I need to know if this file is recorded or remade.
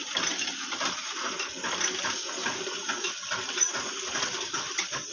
recorded